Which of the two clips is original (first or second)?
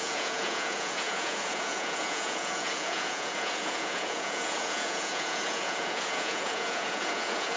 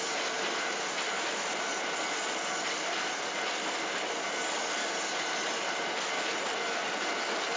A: second